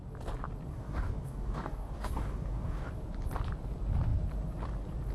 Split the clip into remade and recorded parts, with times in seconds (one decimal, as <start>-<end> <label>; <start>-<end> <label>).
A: 0.0-0.7 recorded; 0.7-2.9 remade; 2.9-5.1 recorded